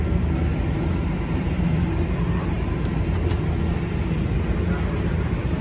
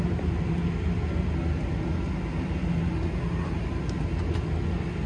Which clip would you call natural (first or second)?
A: second